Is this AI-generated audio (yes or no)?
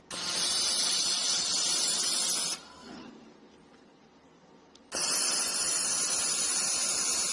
no